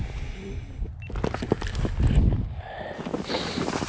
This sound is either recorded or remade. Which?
recorded